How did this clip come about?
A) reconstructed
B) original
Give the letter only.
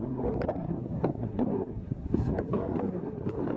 A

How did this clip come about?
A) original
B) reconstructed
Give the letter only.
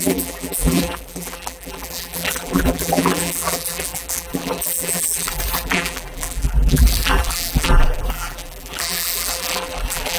B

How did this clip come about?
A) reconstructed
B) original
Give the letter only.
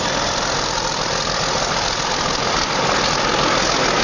B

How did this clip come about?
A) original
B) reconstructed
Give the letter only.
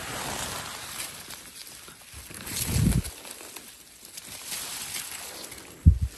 A